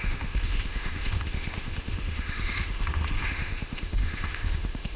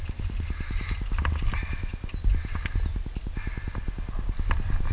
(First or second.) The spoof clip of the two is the first